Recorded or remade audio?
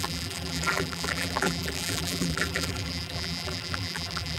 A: remade